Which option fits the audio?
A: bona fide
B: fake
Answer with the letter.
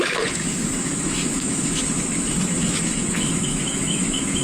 B